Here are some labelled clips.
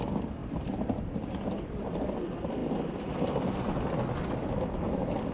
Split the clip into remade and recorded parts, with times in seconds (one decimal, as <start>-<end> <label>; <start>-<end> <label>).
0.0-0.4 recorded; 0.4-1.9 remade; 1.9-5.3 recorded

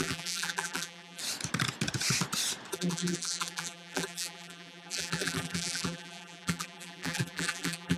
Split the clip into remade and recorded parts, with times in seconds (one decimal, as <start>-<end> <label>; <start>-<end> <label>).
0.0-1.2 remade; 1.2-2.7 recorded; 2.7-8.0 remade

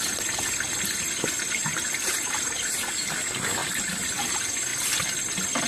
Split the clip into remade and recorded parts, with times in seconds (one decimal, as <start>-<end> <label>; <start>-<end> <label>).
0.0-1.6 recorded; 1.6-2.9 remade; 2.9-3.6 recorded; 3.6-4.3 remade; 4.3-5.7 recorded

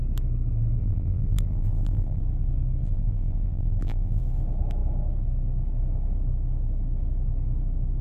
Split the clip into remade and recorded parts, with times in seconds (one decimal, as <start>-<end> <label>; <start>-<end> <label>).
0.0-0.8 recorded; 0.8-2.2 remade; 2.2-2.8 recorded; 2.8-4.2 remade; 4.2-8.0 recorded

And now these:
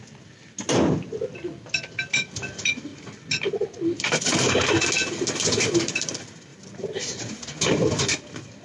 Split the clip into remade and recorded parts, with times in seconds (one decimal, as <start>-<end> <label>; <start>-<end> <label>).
0.0-6.5 recorded; 6.5-8.0 remade; 8.0-8.6 recorded

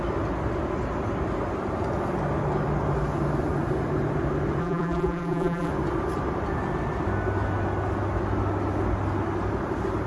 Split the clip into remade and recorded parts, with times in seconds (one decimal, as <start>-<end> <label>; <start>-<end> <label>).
0.0-4.6 recorded; 4.6-5.7 remade; 5.7-10.1 recorded